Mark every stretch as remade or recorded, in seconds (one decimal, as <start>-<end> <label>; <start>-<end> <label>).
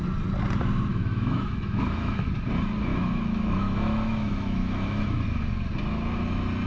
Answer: 0.0-0.9 recorded; 0.9-2.3 remade; 2.3-2.9 recorded; 2.9-5.0 remade; 5.0-6.7 recorded